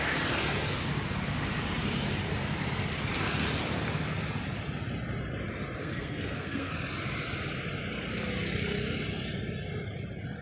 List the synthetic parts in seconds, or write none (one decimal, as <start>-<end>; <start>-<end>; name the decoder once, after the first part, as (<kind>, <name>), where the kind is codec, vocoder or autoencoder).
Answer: 5.8-6.7 (codec, SNAC)